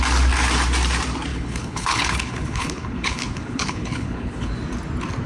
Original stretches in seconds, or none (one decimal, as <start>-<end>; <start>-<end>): 0.0-1.3; 4.5-5.3